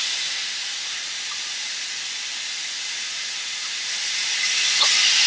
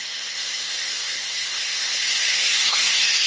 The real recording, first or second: first